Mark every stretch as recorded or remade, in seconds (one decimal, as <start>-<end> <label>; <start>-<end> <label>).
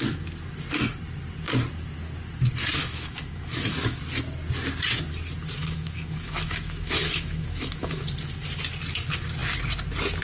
0.0-2.8 recorded; 2.8-4.0 remade; 4.0-5.6 recorded; 5.6-8.0 remade; 8.0-10.2 recorded